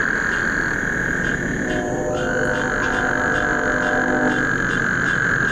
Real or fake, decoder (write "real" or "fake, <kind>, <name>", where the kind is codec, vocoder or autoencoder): real